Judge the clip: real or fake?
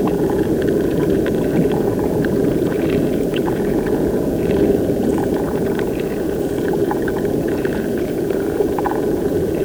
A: fake